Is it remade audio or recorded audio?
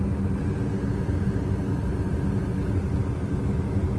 recorded